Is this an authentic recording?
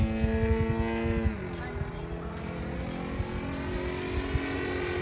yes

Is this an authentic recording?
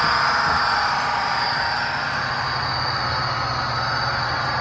yes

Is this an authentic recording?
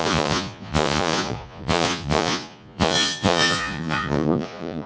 no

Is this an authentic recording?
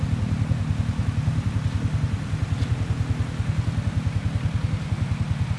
yes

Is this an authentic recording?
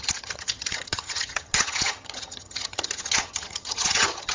no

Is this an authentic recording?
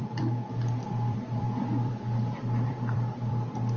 no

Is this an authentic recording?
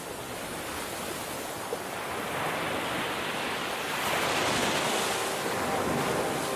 yes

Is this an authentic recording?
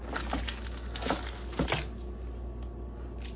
yes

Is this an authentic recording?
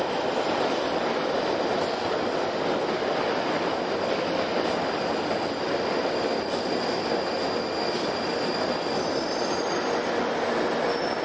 yes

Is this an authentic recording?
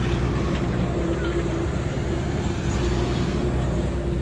yes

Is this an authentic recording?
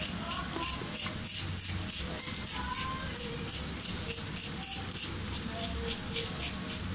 yes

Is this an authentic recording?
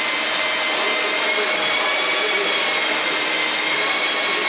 yes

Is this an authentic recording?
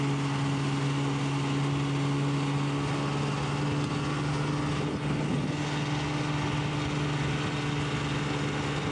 yes